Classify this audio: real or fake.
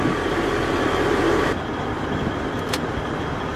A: real